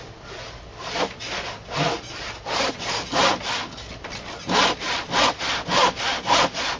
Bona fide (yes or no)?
yes